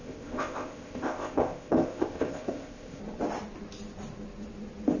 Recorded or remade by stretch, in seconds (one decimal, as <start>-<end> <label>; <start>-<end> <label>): 0.0-3.0 remade; 3.0-5.0 recorded

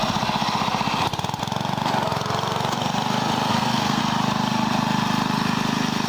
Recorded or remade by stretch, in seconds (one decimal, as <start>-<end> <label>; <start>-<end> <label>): 0.0-3.5 recorded; 3.5-4.0 remade; 4.0-6.1 recorded

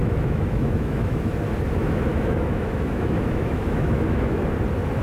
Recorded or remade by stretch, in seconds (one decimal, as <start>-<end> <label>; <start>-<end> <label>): 0.0-1.3 remade; 1.3-1.8 recorded; 1.8-4.4 remade; 4.4-5.0 recorded

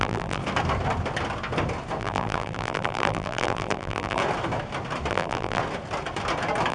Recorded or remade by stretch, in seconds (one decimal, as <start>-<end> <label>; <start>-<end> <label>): 0.0-0.4 remade; 0.4-2.0 recorded; 2.0-4.2 remade; 4.2-5.1 recorded; 5.1-5.6 remade; 5.6-6.7 recorded

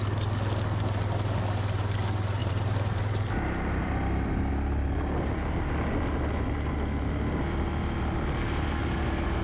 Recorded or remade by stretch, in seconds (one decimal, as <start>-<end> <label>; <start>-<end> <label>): 0.0-2.4 recorded; 2.4-4.5 remade; 4.5-9.4 recorded

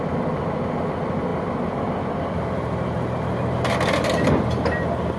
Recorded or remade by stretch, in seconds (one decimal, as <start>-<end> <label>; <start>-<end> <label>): 0.0-5.2 recorded